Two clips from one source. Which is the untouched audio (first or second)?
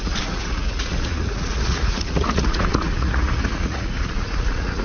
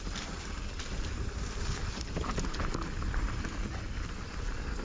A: second